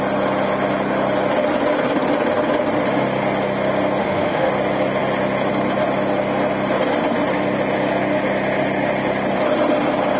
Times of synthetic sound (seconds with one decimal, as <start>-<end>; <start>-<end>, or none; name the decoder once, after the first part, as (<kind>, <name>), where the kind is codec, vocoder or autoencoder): 4.0-4.5 (autoencoder, DAC-VAE)